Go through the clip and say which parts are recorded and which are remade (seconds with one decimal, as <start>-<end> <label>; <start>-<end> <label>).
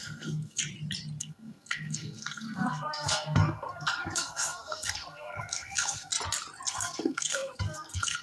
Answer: 0.0-0.6 remade; 0.6-1.2 recorded; 1.2-6.1 remade; 6.1-6.7 recorded; 6.7-8.2 remade